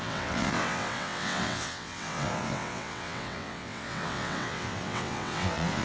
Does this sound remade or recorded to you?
remade